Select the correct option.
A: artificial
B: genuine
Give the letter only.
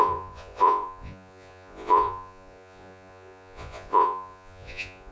A